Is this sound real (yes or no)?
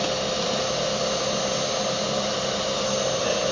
yes